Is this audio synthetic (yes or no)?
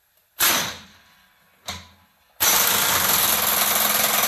no